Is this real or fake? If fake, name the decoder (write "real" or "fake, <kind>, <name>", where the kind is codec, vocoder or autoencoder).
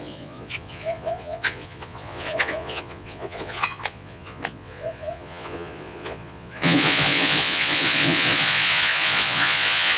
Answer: fake, vocoder, Vocos